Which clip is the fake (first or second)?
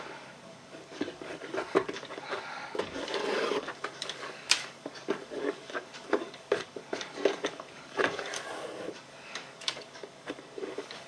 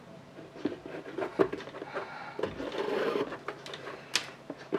first